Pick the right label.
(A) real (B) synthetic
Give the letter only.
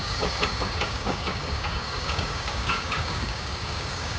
B